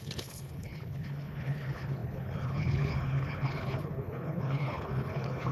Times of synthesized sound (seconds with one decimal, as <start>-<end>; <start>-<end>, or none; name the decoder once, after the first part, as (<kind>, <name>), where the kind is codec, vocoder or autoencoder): 0.0-5.5 (codec, HILCodec)